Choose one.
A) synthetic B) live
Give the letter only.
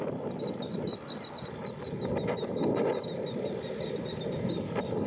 B